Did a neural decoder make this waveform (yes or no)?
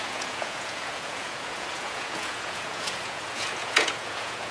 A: yes